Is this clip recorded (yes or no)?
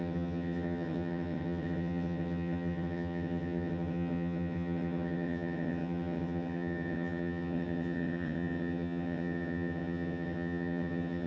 no